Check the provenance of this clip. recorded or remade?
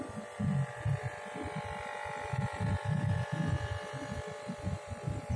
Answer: recorded